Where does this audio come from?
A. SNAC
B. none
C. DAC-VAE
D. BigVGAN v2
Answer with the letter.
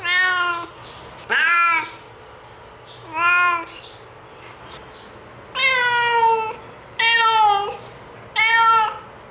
B